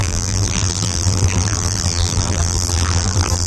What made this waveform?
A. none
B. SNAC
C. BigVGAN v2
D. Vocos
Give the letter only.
C